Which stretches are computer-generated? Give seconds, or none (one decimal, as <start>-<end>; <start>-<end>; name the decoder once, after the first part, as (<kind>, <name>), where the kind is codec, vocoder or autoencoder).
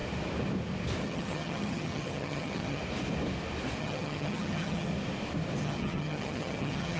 1.0-2.8 (vocoder, HiFi-GAN); 3.8-4.9; 5.6-7.0